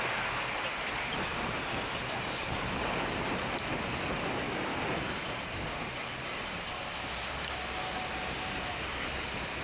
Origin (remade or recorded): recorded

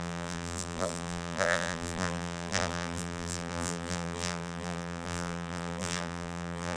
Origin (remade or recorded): remade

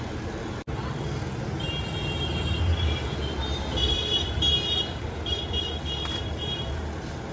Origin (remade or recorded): recorded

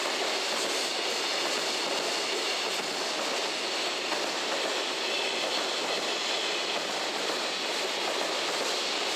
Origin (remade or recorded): recorded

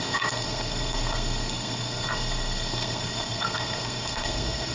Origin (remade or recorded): remade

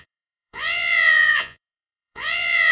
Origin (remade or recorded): remade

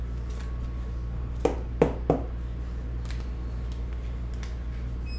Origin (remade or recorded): recorded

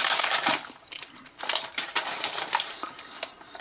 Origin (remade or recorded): remade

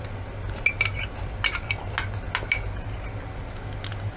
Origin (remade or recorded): recorded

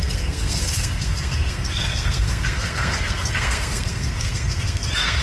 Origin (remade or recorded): remade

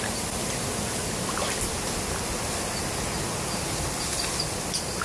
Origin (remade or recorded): recorded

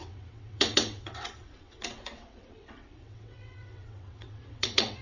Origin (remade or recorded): remade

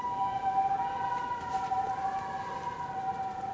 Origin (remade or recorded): recorded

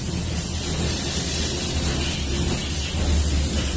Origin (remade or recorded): recorded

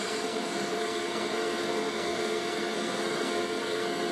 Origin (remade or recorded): remade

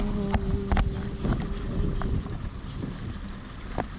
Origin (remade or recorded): recorded